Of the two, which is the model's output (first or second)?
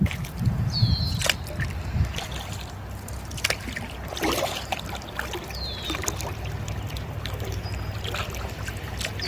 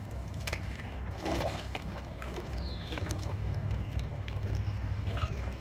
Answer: second